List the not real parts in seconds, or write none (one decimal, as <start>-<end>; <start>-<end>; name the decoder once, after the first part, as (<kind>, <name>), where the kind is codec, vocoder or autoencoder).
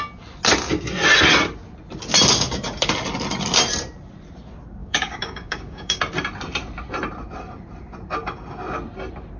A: 4.8-6.0 (codec, DAC)